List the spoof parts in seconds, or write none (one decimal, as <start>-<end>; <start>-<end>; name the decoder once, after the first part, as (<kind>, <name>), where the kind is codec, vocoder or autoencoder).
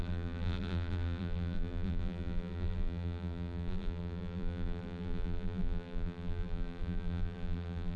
0.0-8.0 (vocoder, BigVGAN v2)